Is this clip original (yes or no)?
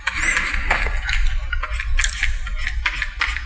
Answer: yes